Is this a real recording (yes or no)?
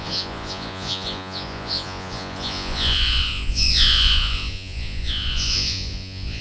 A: no